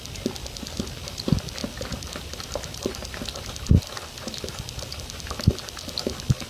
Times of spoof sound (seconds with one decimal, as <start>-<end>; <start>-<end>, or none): none